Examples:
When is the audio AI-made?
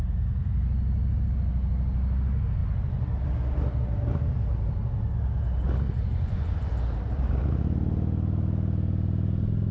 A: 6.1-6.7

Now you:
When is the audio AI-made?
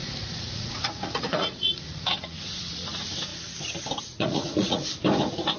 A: 0.0-3.3; 4.0-4.8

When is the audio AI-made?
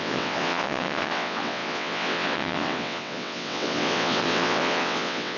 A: 0.0-5.4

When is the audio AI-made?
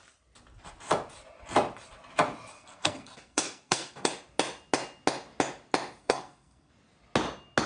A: 2.5-4.1; 6.0-6.7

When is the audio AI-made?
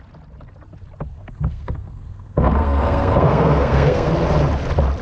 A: 1.1-4.1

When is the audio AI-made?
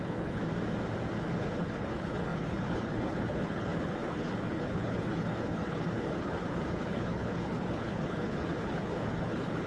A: 0.0-0.4; 1.2-9.7